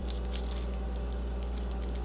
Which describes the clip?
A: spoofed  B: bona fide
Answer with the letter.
B